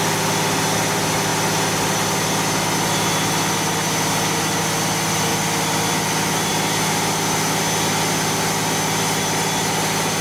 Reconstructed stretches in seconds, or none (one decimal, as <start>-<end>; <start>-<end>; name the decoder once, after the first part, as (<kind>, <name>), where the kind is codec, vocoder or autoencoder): none